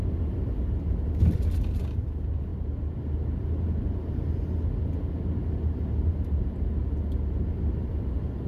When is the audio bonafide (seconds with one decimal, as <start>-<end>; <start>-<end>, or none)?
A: 0.0-1.2; 2.5-7.6